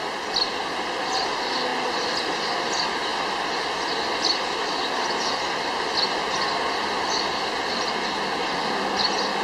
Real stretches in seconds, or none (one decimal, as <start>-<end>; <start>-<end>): 0.0-9.4